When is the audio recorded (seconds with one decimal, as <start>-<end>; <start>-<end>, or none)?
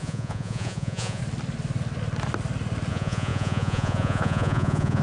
1.2-2.9